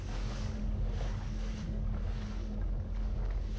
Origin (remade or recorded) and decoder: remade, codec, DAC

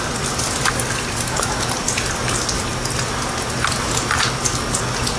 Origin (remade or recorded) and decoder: recorded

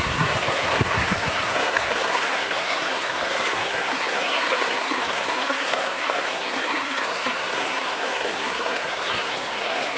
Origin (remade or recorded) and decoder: remade, codec, SNAC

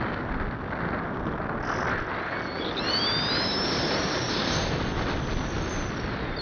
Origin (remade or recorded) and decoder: recorded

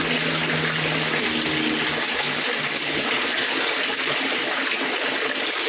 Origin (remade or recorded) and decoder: recorded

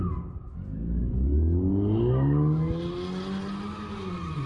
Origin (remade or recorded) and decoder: recorded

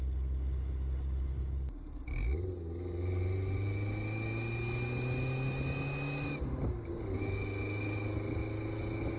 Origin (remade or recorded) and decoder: recorded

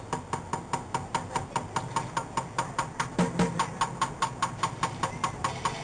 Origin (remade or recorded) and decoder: recorded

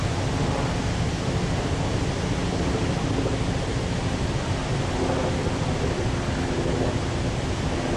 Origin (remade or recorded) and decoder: recorded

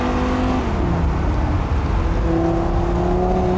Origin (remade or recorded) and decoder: recorded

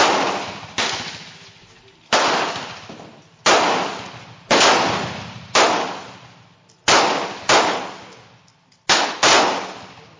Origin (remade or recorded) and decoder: recorded